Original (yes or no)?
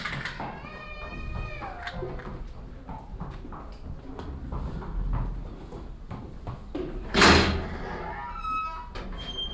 yes